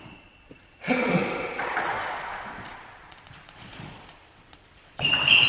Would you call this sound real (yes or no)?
no